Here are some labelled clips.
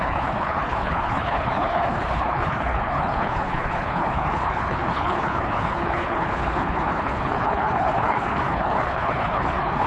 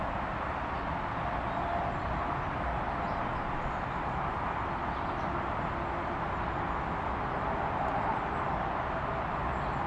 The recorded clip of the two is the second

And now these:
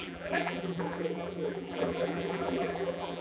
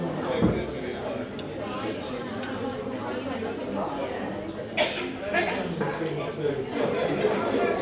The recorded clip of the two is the second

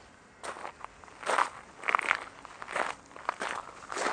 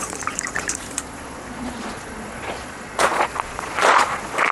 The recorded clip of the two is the first